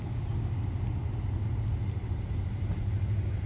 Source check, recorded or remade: recorded